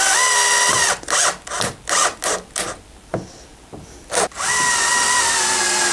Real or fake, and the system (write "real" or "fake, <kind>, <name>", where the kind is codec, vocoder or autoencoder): real